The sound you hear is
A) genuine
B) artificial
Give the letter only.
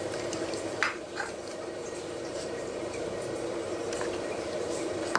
B